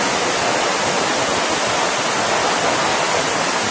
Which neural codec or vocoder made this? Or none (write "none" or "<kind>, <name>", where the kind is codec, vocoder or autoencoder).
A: none